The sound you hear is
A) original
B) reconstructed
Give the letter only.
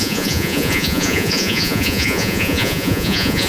B